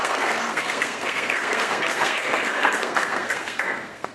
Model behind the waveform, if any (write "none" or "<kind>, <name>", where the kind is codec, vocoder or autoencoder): codec, SNAC